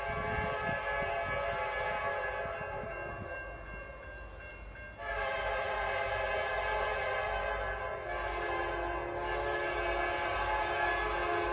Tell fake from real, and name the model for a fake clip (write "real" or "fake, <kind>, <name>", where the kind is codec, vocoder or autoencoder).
real